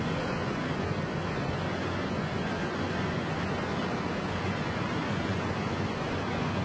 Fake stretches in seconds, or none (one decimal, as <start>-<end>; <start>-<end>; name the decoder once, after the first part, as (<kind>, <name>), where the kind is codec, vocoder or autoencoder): 0.0-3.8 (vocoder, Vocos); 4.4-6.6